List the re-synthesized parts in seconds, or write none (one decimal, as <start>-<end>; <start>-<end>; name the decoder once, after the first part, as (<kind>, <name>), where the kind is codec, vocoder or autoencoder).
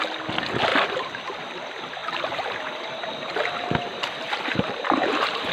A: 0.7-1.2 (vocoder, BigVGAN v2); 2.0-5.5